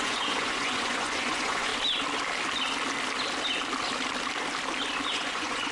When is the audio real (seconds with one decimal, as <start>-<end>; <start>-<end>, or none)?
1.7-5.1